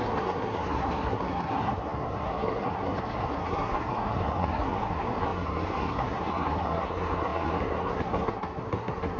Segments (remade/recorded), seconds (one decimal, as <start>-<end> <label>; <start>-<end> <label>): 0.0-9.2 remade

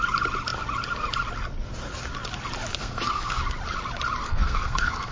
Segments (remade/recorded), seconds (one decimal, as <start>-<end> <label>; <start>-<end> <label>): 0.0-2.8 recorded; 2.8-3.4 remade; 3.4-4.2 recorded; 4.2-5.1 remade

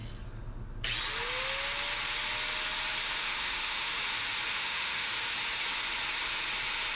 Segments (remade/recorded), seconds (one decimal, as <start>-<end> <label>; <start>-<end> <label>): 0.0-3.2 recorded; 3.2-3.9 remade; 3.9-4.5 recorded; 4.5-5.1 remade; 5.1-7.0 recorded